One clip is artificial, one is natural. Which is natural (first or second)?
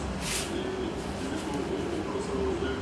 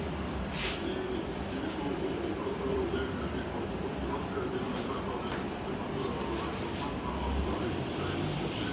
first